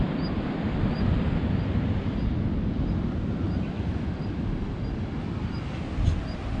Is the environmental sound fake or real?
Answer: real